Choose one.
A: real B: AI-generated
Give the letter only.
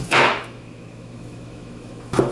B